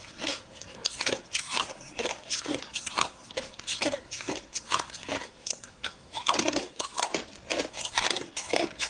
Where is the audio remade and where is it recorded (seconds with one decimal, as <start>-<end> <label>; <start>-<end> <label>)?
0.0-7.1 remade; 7.1-7.7 recorded; 7.7-8.9 remade